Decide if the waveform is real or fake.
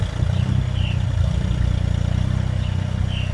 real